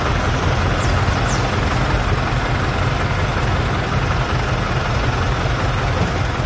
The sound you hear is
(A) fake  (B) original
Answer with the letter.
B